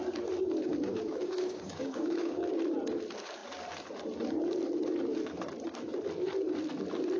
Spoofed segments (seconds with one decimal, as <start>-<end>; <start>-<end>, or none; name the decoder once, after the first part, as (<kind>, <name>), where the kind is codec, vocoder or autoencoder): 0.6-2.6 (codec, DAC)